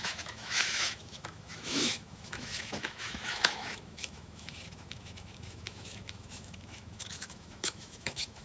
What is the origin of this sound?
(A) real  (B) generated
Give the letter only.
B